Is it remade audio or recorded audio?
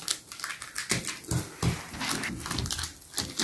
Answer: recorded